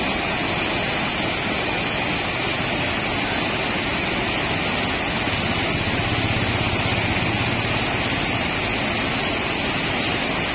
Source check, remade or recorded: recorded